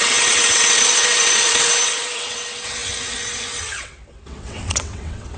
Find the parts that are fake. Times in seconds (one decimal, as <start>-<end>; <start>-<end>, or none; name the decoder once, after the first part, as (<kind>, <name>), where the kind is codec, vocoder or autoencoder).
0.0-5.4 (vocoder, WaveNeXt)